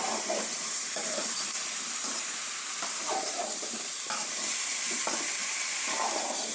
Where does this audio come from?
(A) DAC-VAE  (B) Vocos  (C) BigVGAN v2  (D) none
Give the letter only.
C